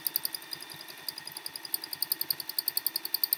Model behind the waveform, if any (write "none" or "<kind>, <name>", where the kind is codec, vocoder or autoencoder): none